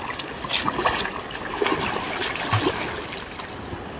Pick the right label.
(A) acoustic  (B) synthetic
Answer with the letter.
A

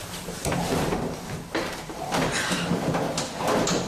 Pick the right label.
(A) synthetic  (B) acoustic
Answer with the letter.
A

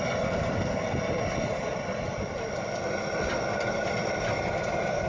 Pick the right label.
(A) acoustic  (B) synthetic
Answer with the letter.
A